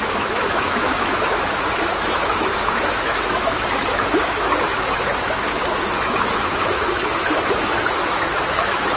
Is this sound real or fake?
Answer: fake